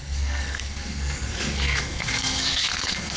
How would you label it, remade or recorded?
remade